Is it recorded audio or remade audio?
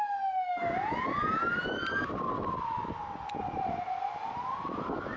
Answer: recorded